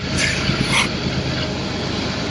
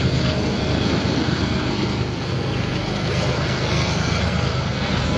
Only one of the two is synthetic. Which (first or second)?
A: second